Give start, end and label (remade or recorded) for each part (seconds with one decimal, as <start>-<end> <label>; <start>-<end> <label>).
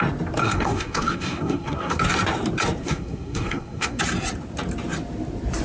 0.0-0.4 recorded; 0.4-2.0 remade; 2.0-2.8 recorded; 2.8-4.0 remade; 4.0-5.6 recorded